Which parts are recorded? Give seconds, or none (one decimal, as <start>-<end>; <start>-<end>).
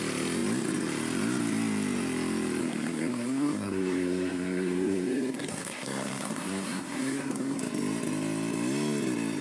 0.0-2.6; 7.6-9.4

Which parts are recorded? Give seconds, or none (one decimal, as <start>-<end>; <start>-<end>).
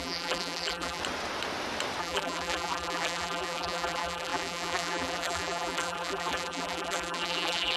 1.0-2.0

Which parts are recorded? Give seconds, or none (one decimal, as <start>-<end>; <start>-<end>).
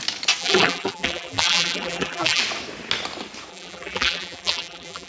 0.0-0.4; 2.4-3.5